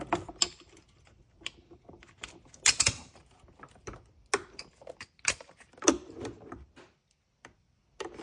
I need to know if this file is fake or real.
real